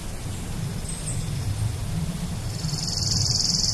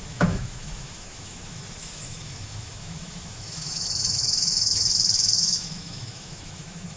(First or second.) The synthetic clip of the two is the second